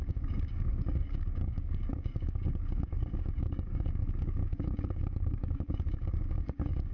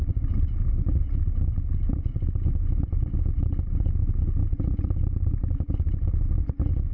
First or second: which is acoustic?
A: second